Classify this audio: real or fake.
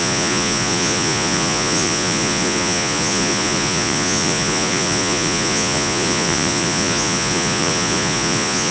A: fake